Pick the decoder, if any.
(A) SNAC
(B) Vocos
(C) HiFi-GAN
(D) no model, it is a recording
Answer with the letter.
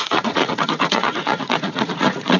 B